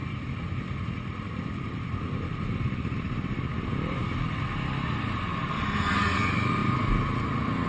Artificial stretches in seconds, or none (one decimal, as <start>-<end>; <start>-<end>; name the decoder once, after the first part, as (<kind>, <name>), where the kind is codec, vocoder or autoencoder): none